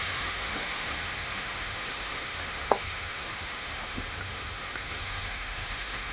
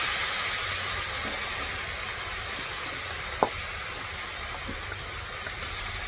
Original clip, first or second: second